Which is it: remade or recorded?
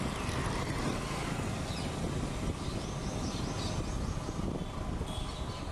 recorded